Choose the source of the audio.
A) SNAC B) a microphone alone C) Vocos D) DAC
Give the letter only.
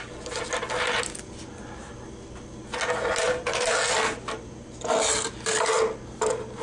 B